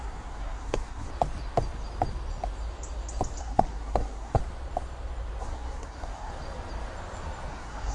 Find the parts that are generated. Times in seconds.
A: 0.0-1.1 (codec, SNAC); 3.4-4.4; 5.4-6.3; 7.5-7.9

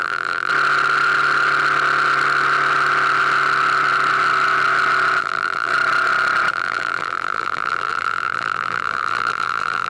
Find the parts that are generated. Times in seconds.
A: 0.0-0.5 (vocoder, BigVGAN v2); 5.2-5.7; 6.5-9.9

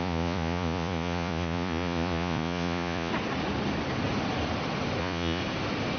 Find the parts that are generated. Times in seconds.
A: 0.0-3.1 (vocoder, Vocos); 5.0-5.4

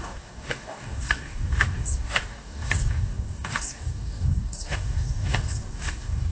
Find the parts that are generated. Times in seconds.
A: 0.0-6.3 (codec, DAC)

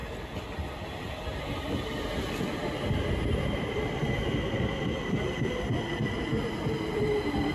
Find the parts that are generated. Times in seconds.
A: 2.7-4.0 (vocoder, BigVGAN v2); 4.5-7.5

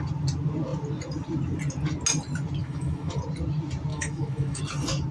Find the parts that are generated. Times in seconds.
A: 2.6-3.2 (autoencoder, DAC-VAE); 3.9-4.6